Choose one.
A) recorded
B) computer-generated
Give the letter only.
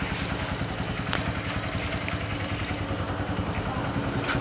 A